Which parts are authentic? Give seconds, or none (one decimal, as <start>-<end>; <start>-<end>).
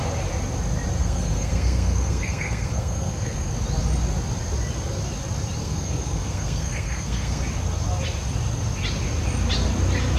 0.0-1.0; 3.5-5.6; 7.4-10.2